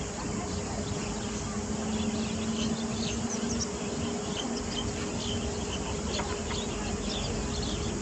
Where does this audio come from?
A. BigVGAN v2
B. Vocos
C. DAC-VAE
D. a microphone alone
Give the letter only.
D